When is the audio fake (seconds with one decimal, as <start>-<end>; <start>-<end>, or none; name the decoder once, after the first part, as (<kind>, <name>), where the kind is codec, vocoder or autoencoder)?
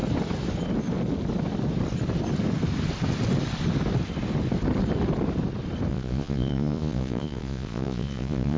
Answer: 5.9-8.6 (vocoder, Vocos)